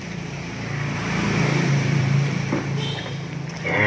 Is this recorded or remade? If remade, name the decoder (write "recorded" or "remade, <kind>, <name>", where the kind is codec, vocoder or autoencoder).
remade, vocoder, BigVGAN v2